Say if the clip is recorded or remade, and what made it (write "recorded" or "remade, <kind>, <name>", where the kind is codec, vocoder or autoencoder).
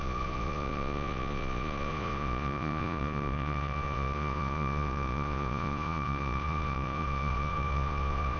remade, vocoder, Vocos